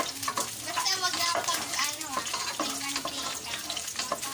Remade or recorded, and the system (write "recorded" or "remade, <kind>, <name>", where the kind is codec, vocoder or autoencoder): remade, vocoder, BigVGAN v2